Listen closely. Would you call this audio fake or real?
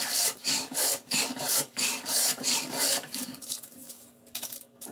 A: fake